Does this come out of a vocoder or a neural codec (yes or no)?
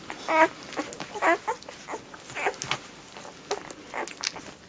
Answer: no